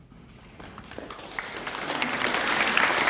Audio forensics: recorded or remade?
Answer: recorded